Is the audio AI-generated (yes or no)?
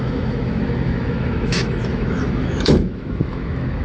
yes